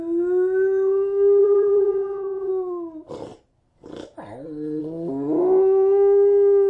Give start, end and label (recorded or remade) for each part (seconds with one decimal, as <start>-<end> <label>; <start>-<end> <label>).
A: 0.0-1.4 recorded; 1.4-2.5 remade; 2.5-6.7 recorded